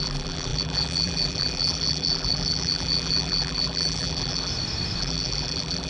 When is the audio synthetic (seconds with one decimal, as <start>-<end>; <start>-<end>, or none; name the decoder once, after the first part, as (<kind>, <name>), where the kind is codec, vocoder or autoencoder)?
0.0-4.5 (vocoder, BigVGAN v2); 5.0-5.9